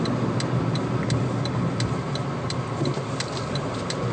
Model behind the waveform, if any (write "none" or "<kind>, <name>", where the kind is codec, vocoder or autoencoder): none